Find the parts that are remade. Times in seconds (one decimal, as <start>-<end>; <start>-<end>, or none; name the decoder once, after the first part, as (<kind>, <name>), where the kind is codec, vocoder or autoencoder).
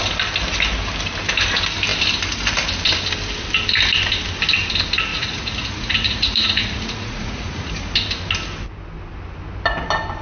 5.1-7.7 (vocoder, Vocos)